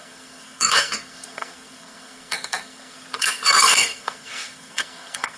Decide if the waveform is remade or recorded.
remade